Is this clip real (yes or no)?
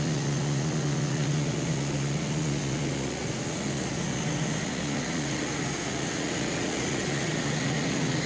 no